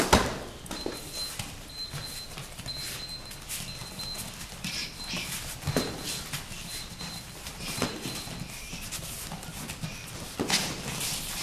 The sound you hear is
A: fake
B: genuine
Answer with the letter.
B